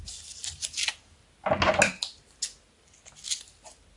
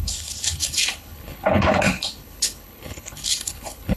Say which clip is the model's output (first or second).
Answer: second